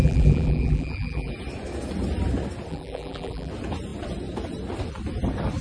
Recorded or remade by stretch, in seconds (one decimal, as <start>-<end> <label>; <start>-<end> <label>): 0.0-1.3 remade; 1.3-2.7 recorded; 2.7-3.5 remade; 3.5-5.6 recorded